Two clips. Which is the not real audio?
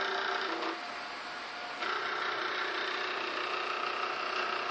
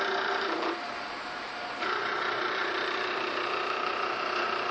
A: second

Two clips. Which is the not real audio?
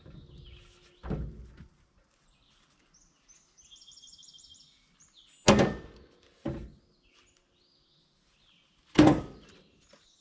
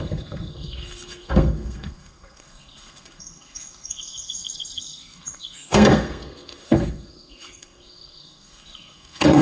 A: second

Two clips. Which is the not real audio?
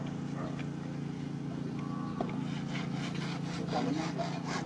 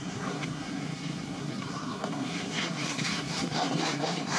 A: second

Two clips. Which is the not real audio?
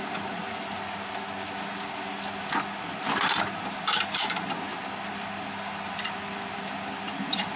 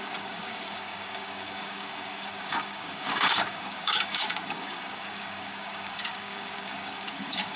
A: second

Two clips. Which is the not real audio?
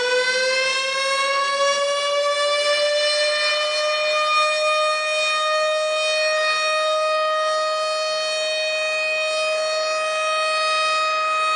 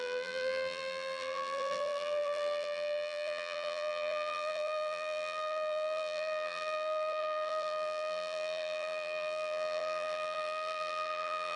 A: second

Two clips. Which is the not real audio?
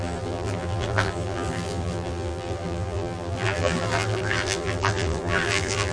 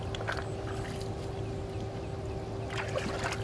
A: first